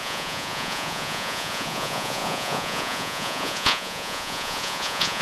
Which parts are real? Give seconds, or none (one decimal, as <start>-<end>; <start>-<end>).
none